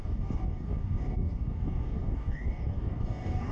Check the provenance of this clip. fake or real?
fake